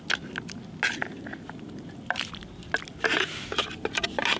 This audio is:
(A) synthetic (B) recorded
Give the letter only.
B